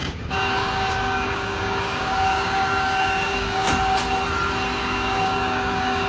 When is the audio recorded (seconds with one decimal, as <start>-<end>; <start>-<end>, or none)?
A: 3.7-4.8